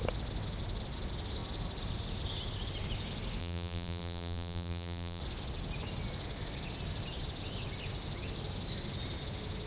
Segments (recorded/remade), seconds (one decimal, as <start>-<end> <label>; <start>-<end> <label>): 0.0-3.4 recorded; 3.4-5.2 remade; 5.2-9.7 recorded